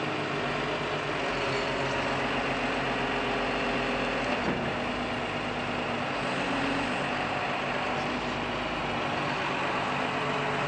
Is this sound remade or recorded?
recorded